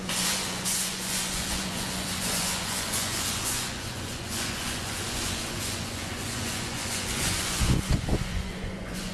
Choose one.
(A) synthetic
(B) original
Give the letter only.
A